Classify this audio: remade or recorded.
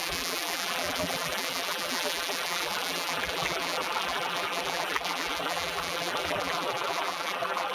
remade